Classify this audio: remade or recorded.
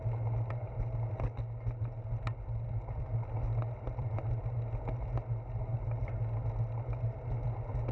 recorded